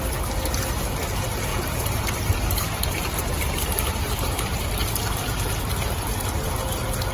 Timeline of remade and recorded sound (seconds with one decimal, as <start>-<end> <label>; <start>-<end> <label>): 0.0-1.5 recorded; 1.5-5.4 remade; 5.4-7.1 recorded